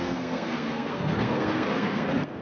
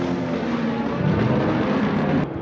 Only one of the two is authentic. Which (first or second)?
second